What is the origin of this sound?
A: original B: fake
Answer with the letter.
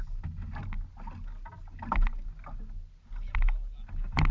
A